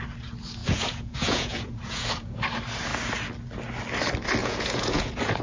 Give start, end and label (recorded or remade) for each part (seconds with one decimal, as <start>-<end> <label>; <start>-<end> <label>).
0.0-0.6 recorded; 0.6-2.5 remade; 2.5-4.4 recorded; 4.4-5.4 remade